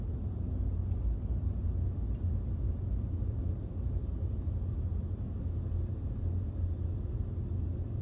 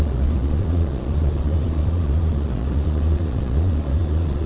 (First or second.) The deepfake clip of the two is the second